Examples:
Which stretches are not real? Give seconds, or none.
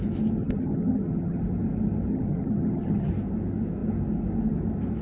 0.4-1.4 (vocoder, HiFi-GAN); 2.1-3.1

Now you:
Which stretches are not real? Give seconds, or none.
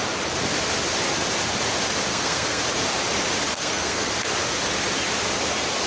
2.1-2.6 (codec, SNAC); 3.5-4.1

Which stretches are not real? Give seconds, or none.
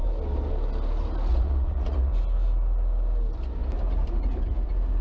1.3-2.1 (vocoder, Vocos)